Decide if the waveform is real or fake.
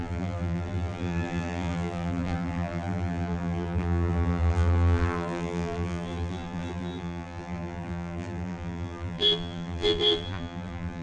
fake